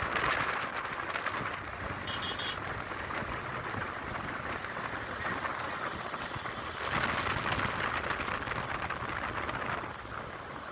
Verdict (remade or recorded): recorded